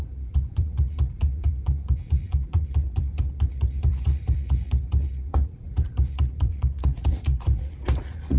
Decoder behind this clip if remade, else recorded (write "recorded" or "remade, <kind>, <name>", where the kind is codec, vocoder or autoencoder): remade, vocoder, Vocos